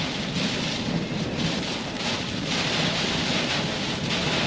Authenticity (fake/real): real